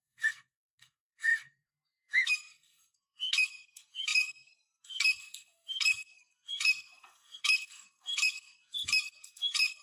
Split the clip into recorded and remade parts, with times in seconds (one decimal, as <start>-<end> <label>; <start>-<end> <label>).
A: 0.0-9.8 remade